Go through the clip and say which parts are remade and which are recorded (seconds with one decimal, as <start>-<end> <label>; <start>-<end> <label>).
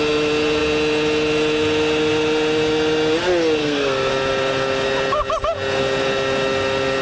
0.0-3.6 recorded; 3.6-4.1 remade; 4.1-7.0 recorded